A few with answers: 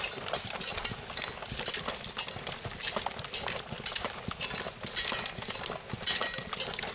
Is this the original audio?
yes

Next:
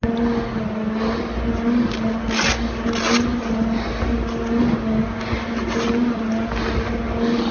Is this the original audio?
yes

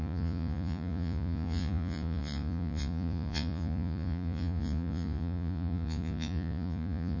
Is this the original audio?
no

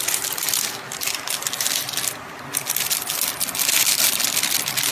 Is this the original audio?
yes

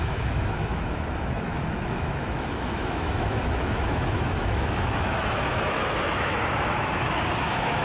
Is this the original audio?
no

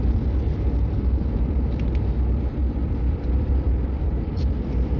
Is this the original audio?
no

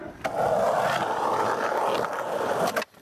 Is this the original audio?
yes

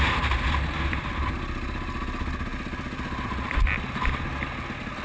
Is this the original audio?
yes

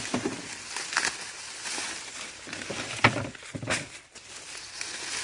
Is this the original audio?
yes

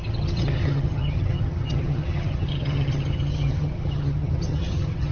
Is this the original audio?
no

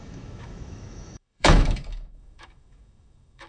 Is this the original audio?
no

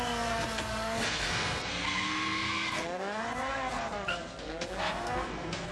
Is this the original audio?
no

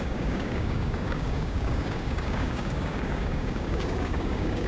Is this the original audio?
no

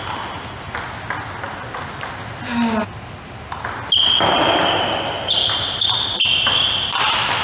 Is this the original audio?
yes